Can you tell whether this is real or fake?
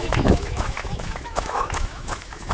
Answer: fake